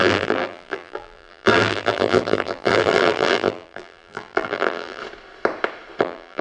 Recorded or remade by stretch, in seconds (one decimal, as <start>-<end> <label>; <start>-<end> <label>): 0.0-5.0 remade; 5.0-6.0 recorded; 6.0-6.4 remade